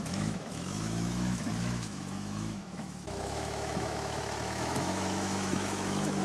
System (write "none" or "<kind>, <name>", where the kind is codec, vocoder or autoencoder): autoencoder, DAC-VAE